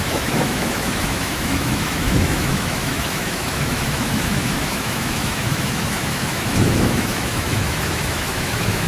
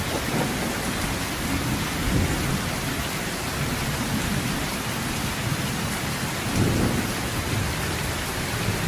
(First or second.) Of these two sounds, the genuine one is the second